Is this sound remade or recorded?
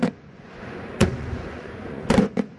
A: remade